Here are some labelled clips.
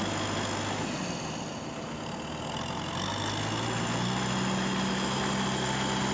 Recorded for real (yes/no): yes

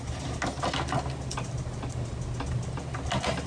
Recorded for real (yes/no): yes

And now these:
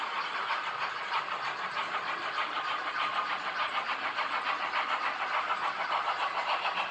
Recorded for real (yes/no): yes